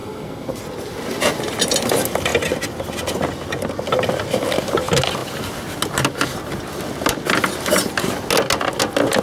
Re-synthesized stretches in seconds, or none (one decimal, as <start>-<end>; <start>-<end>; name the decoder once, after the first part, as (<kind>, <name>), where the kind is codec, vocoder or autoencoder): 0.0-0.6 (codec, SNAC)

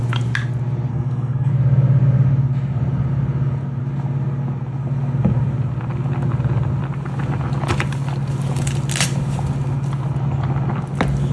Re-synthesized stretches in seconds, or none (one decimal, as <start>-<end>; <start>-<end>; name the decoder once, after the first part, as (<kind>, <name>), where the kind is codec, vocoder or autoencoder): 0.9-1.5 (codec, SNAC)

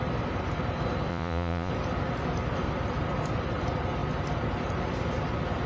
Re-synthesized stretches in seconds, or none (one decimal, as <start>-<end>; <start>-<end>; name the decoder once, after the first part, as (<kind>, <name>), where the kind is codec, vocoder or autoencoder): 1.1-1.7 (vocoder, Vocos)

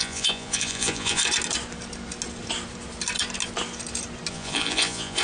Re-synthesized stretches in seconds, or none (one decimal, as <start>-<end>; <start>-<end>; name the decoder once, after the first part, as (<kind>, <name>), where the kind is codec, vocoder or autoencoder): 0.0-1.2 (vocoder, Vocos); 4.3-5.2

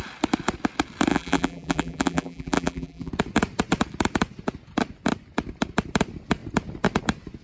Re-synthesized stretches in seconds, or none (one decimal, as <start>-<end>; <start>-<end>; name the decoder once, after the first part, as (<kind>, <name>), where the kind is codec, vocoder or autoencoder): 1.1-3.1 (vocoder, BigVGAN v2)